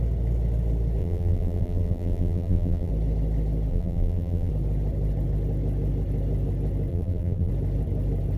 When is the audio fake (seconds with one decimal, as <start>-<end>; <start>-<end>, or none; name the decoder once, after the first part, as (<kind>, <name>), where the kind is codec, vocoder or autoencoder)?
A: 1.0-2.9 (vocoder, BigVGAN v2); 3.7-4.5; 6.9-7.5